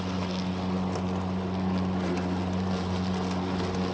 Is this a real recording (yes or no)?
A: yes